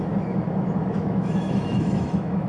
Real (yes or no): no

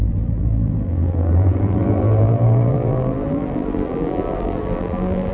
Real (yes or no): no